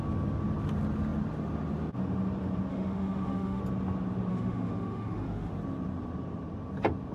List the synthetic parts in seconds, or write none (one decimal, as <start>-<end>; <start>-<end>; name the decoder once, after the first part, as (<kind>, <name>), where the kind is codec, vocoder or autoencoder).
2.7-3.6 (autoencoder, DAC-VAE); 4.3-5.5